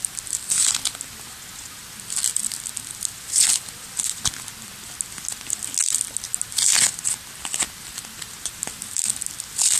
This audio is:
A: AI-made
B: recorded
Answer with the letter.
B